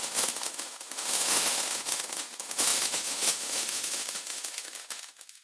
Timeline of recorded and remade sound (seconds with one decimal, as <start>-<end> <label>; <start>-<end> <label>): 0.0-5.4 remade